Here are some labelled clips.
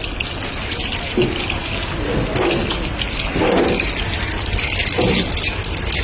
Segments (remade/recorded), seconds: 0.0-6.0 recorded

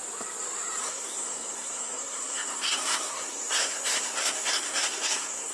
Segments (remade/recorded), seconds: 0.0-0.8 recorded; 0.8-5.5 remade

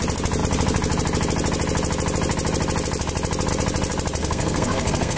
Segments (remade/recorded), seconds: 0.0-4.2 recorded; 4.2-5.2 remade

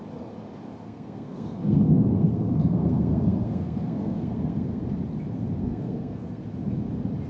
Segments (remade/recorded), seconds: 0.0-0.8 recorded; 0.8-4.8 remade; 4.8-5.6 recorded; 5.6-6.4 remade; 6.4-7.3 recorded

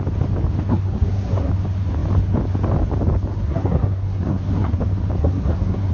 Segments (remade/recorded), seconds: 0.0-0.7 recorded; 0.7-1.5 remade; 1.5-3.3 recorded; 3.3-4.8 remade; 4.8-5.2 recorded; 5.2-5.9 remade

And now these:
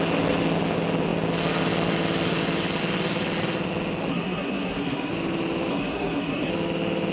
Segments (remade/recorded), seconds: 0.0-4.1 recorded; 4.1-5.1 remade; 5.1-5.7 recorded; 5.7-6.5 remade; 6.5-7.1 recorded